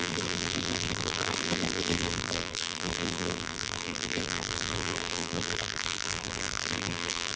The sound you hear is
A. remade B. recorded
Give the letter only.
A